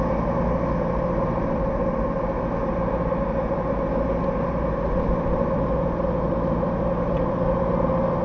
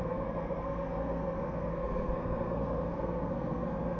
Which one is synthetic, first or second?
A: second